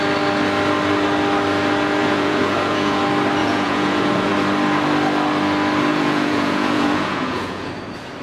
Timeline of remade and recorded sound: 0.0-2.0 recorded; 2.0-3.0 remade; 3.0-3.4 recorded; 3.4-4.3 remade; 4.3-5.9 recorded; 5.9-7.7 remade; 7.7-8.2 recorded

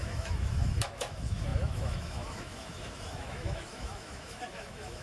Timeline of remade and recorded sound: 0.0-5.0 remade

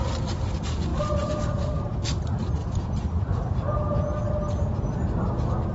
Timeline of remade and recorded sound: 0.0-5.7 recorded